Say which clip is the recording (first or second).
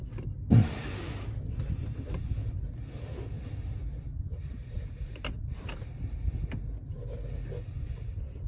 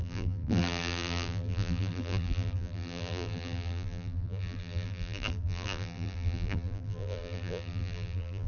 first